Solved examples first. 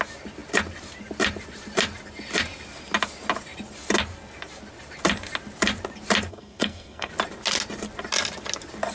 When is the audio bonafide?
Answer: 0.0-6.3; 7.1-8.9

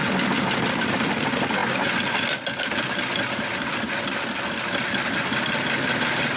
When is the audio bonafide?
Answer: 0.0-6.4